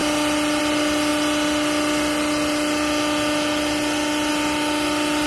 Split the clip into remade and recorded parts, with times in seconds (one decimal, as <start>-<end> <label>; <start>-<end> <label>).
0.0-5.3 recorded